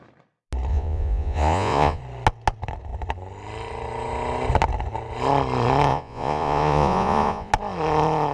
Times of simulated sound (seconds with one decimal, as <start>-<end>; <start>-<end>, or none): 0.7-2.0; 5.9-7.5